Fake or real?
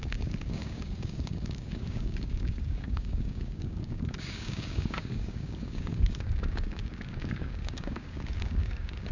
fake